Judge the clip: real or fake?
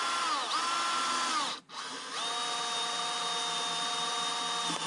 real